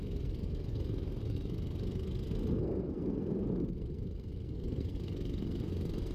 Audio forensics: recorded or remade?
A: remade